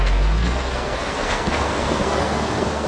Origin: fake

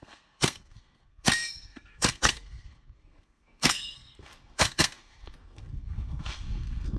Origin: fake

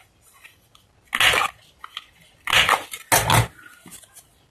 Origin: real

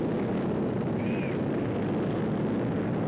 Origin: real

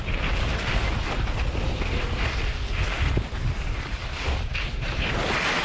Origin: real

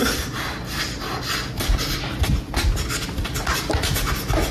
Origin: real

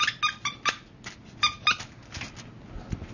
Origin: real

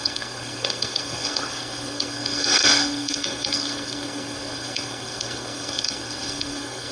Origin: fake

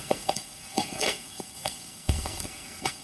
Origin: fake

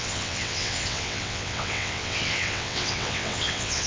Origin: fake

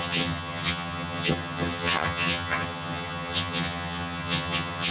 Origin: fake